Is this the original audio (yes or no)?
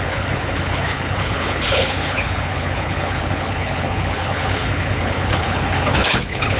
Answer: no